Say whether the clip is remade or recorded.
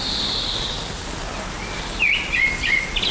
recorded